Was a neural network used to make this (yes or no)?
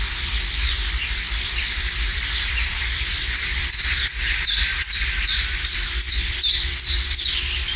yes